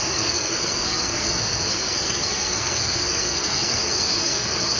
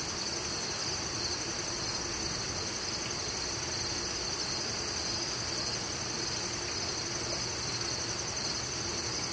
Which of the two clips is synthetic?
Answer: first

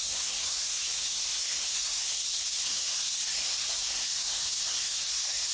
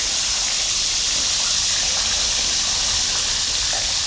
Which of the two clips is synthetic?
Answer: first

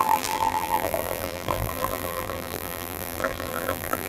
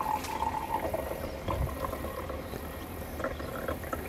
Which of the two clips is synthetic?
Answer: first